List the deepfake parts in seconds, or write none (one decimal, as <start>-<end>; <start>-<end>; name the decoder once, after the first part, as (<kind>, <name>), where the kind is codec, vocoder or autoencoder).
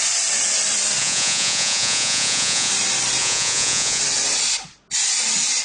1.0-2.7 (vocoder, Vocos); 3.2-4.0